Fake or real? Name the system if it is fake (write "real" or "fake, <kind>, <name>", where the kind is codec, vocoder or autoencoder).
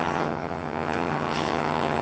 fake, vocoder, HiFi-GAN